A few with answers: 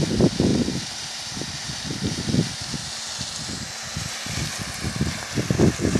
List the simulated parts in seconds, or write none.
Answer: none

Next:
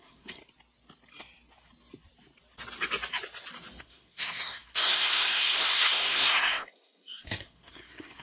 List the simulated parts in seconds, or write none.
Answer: 0.0-0.4 (codec, SNAC); 3.8-8.2